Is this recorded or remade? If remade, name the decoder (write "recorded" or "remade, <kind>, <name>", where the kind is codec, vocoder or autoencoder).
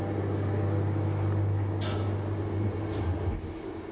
recorded